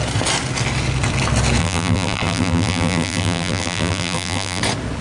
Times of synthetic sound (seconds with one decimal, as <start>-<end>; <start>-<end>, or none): 1.6-4.6